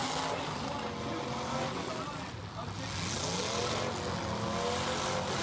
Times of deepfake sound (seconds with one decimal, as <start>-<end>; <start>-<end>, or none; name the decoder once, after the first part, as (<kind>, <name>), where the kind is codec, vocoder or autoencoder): none